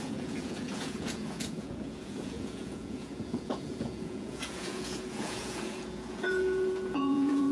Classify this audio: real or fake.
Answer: fake